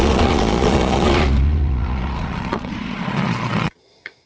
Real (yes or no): no